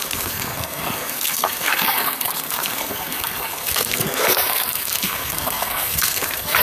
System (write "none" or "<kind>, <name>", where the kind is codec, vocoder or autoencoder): codec, SNAC